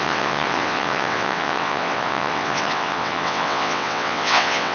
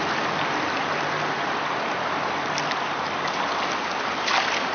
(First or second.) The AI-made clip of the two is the first